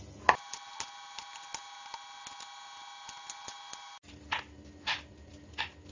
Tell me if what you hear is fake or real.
real